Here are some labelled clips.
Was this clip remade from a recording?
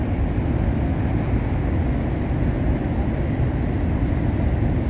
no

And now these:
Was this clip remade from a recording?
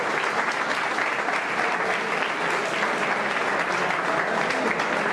no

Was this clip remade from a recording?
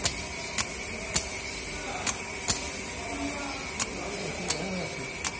no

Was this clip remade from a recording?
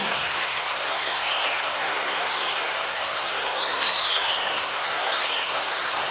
yes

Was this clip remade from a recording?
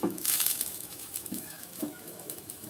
yes